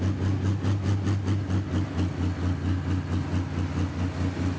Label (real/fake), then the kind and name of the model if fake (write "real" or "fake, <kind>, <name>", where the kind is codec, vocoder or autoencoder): real